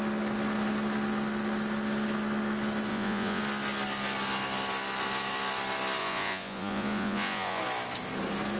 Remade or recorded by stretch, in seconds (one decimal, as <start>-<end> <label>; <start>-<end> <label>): 0.0-2.9 recorded; 2.9-3.4 remade; 3.4-6.0 recorded; 6.0-7.6 remade; 7.6-8.6 recorded